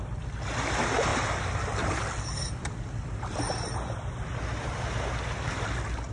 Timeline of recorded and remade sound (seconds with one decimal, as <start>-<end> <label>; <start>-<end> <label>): 0.0-6.1 recorded